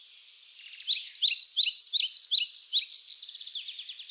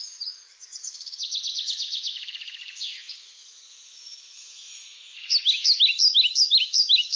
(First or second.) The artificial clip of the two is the second